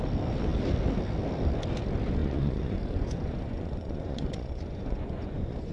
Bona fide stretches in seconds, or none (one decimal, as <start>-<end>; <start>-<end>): 0.0-2.2